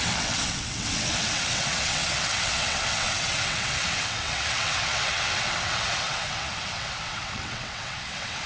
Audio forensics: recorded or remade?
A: remade